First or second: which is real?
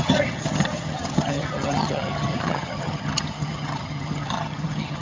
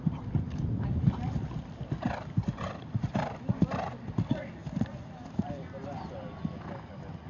second